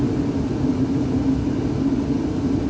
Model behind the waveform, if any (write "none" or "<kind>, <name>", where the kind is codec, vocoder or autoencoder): none